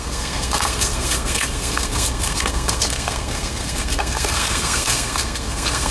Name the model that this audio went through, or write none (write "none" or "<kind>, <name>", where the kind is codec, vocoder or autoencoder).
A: codec, SNAC